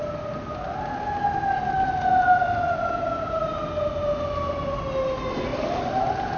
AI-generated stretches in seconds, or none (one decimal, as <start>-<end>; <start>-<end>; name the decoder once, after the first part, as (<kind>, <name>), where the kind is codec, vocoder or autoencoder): 5.5-6.4 (vocoder, BigVGAN v2)